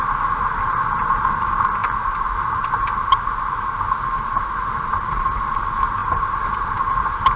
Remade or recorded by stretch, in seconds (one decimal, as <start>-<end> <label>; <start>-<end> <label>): 0.0-7.4 remade

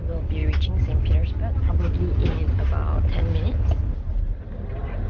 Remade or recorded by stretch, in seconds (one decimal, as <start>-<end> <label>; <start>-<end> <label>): 0.0-5.1 recorded

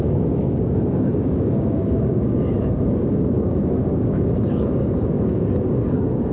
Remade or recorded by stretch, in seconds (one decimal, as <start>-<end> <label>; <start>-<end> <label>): 0.0-6.3 remade

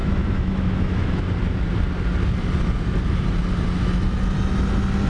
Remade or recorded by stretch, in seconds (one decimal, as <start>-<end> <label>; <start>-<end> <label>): 0.0-1.2 remade; 1.2-5.1 recorded

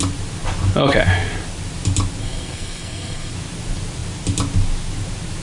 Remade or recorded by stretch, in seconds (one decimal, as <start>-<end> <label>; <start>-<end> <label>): 0.0-2.2 recorded; 2.2-3.3 remade; 3.3-5.4 recorded

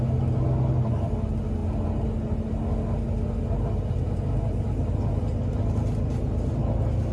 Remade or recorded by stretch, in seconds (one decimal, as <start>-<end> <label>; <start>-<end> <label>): 0.0-7.1 recorded

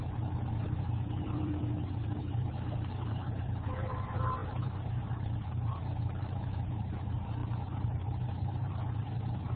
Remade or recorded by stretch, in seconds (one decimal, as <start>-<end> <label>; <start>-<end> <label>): 0.0-9.6 remade

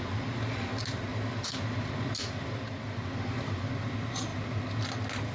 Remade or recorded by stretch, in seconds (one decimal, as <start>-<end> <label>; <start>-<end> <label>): 0.0-1.1 recorded; 1.1-3.7 remade; 3.7-5.3 recorded